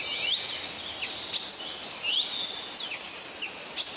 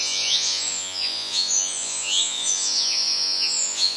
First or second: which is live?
first